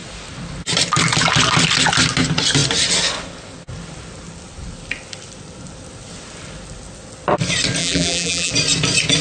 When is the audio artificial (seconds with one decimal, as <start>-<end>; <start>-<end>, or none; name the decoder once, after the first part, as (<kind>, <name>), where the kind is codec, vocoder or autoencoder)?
7.8-8.5 (vocoder, BigVGAN v2)